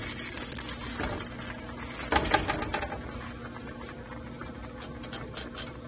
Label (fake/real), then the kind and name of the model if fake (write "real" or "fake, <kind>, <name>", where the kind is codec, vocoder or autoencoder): real